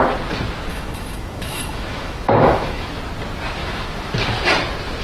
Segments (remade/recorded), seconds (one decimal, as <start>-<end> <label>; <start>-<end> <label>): 0.0-0.7 recorded; 0.7-2.9 remade; 2.9-3.6 recorded; 3.6-4.1 remade; 4.1-5.0 recorded